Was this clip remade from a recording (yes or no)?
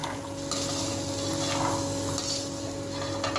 no